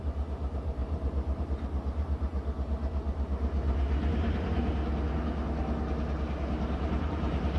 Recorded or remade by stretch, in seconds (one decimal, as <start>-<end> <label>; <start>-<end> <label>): 0.0-2.3 remade; 2.3-6.9 recorded; 6.9-7.6 remade